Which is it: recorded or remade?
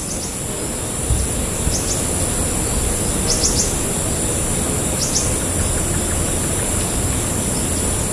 recorded